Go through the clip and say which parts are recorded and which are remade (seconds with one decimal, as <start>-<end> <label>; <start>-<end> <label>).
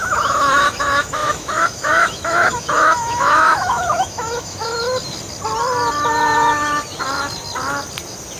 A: 0.0-4.7 remade; 4.7-8.4 recorded